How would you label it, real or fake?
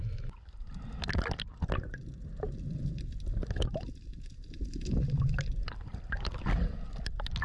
real